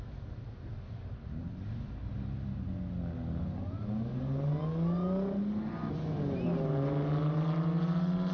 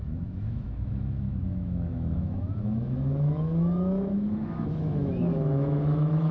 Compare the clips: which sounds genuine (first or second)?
first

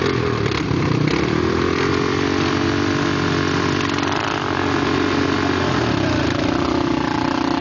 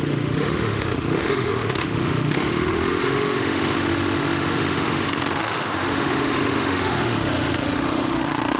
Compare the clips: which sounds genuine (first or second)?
first